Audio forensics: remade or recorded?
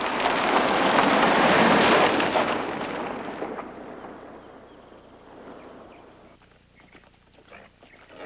recorded